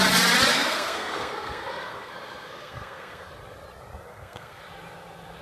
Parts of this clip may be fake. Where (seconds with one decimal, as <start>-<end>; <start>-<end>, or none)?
0.5-3.3; 4.1-4.6